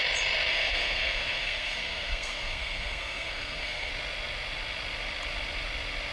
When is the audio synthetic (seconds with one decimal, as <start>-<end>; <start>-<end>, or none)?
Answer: 0.5-3.9

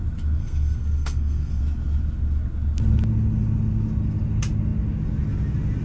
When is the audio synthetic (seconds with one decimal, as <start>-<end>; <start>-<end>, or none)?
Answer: 0.4-1.6

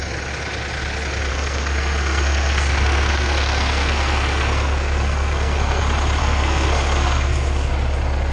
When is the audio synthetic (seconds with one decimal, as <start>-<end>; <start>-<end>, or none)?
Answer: 1.3-5.8; 6.2-7.7